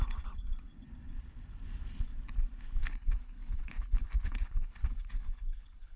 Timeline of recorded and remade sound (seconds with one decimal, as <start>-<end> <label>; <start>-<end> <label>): 0.0-2.8 recorded; 2.8-6.0 remade